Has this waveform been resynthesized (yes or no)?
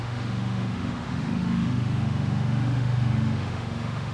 yes